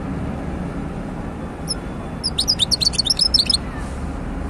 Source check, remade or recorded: recorded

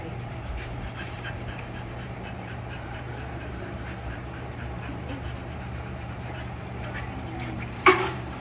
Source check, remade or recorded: remade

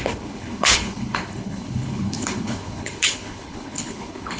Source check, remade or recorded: remade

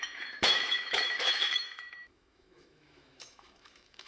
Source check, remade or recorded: remade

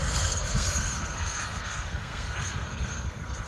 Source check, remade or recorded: remade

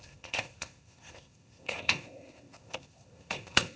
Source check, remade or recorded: remade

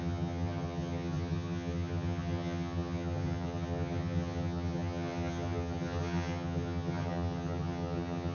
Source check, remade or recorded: remade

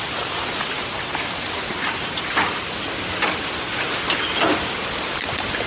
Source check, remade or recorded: recorded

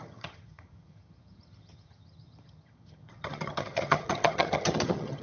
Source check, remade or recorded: remade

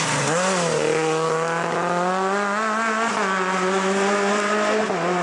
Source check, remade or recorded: recorded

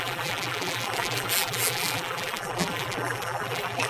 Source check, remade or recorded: remade